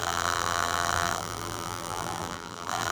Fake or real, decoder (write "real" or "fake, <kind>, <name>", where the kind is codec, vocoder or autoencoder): fake, vocoder, BigVGAN v2